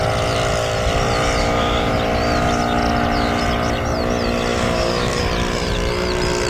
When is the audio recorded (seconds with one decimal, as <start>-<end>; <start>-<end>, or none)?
0.0-1.4; 1.9-4.5; 5.2-6.5